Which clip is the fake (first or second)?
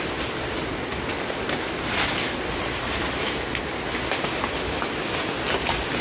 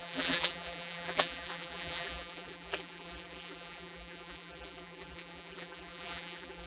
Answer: second